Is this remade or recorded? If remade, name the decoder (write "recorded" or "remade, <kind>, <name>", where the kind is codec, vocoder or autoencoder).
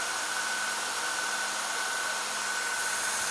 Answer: recorded